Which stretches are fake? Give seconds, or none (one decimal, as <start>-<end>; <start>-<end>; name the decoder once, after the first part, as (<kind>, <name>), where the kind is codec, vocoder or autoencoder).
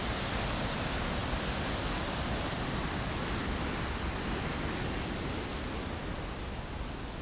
none